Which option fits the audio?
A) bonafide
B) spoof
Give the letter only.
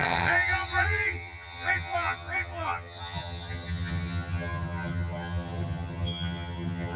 B